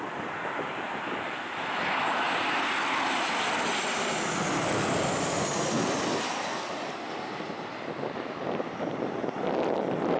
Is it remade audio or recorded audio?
recorded